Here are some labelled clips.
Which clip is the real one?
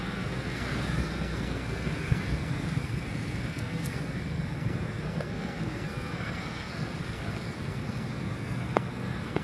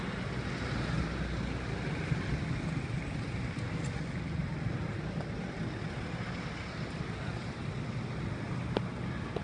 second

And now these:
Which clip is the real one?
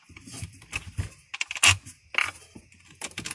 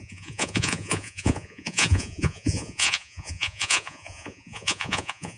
first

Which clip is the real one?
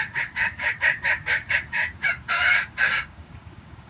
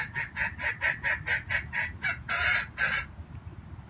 second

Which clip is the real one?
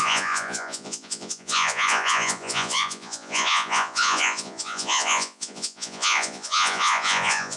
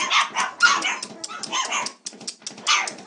second